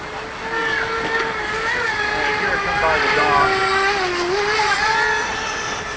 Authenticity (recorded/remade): recorded